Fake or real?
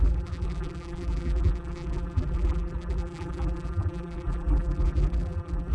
fake